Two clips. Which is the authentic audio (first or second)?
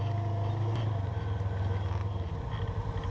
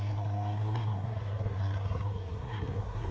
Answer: first